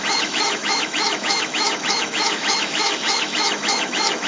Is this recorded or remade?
remade